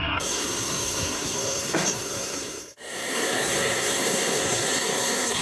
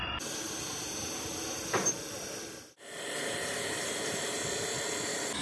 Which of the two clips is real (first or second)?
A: second